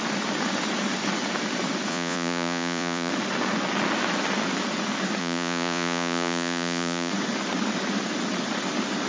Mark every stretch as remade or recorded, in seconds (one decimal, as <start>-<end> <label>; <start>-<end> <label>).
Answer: 0.0-1.9 recorded; 1.9-3.1 remade; 3.1-5.2 recorded; 5.2-7.1 remade; 7.1-9.1 recorded